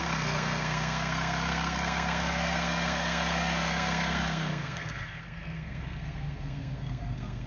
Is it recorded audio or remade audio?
remade